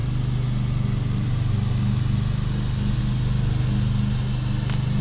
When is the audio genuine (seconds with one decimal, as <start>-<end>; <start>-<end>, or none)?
0.0-5.0